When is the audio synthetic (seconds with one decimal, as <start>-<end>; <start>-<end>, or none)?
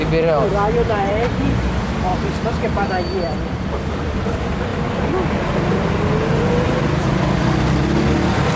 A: none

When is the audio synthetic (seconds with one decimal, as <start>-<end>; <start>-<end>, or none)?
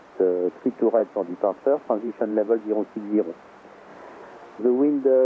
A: 1.0-2.6; 3.9-4.6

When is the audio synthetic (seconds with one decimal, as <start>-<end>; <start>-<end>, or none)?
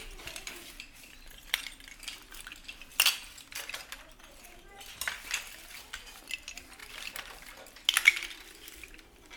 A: 6.8-7.7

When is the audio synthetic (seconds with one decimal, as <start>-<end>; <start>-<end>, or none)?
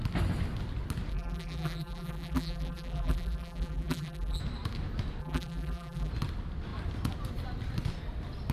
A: 1.1-4.4; 5.2-6.1